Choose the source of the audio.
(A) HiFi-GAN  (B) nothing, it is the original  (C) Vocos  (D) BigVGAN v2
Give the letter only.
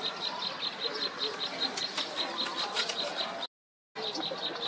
B